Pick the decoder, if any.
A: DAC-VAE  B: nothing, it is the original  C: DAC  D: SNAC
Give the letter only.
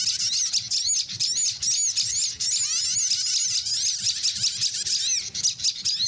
B